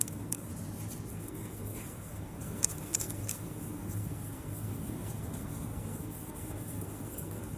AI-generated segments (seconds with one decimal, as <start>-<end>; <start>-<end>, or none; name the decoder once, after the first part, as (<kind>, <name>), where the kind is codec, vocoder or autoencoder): 0.0-0.5 (codec, SNAC); 1.1-7.6